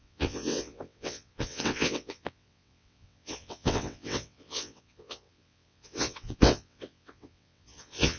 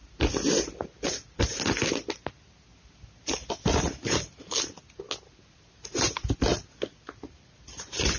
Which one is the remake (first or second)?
first